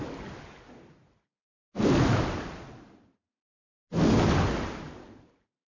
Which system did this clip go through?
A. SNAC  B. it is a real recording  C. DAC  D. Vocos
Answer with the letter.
B